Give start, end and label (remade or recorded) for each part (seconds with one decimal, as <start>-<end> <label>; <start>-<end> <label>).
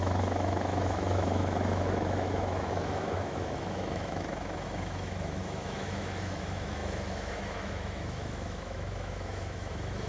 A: 0.0-10.1 remade